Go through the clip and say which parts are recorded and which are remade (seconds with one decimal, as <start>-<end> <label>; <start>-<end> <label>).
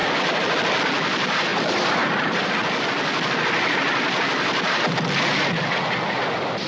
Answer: 0.0-1.5 recorded; 1.5-2.5 remade; 2.5-6.7 recorded